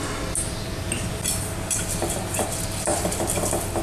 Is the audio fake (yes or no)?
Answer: no